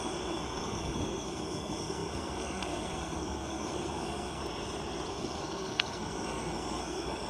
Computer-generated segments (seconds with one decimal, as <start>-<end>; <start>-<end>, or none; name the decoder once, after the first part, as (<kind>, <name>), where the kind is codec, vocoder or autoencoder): 0.0-4.4 (codec, SNAC); 5.1-7.3